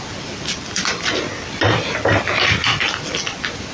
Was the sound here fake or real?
real